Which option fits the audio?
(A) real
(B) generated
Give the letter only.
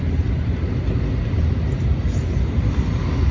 A